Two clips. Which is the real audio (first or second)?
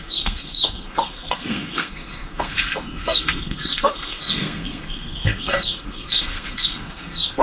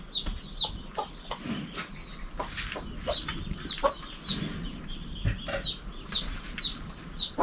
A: second